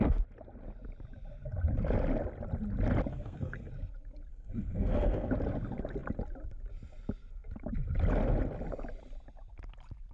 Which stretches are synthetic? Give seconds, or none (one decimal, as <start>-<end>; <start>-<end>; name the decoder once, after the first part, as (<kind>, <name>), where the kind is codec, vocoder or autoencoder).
3.1-3.7 (codec, SNAC); 4.3-5.3